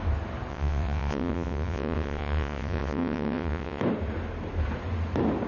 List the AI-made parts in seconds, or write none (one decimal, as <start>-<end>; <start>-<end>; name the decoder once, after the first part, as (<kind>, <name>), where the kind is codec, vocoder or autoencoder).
0.5-3.8 (vocoder, WaveNeXt)